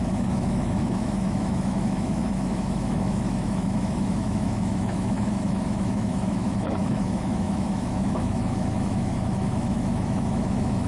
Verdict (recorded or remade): remade